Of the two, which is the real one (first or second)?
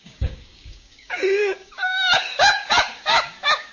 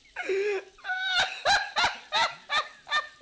second